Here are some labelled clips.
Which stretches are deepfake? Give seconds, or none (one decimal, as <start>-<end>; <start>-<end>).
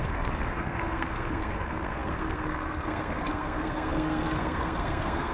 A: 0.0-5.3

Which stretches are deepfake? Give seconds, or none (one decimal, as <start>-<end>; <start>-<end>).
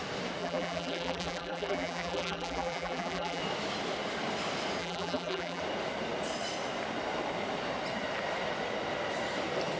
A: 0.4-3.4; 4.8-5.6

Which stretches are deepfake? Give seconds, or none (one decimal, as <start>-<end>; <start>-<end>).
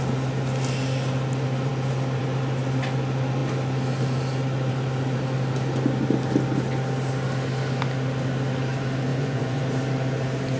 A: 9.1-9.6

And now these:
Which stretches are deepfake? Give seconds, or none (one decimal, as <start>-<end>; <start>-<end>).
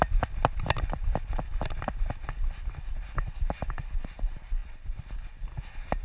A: none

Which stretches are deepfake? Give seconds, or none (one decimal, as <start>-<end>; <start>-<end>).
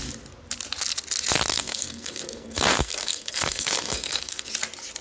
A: 1.5-4.5